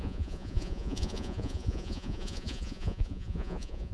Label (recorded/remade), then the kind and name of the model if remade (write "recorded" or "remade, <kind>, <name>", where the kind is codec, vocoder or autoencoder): remade, vocoder, Vocos